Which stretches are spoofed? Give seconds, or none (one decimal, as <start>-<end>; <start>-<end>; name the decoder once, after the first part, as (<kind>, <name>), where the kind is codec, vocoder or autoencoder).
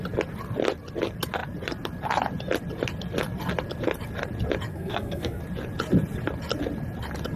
4.7-5.4 (codec, SNAC)